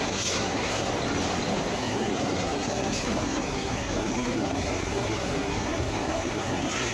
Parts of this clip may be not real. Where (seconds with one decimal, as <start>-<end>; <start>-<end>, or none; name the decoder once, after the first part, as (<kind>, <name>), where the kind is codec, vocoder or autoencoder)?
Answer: 0.0-0.9 (codec, SNAC); 1.8-6.9